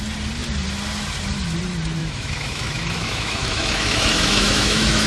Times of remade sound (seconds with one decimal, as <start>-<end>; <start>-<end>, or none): 2.0-5.1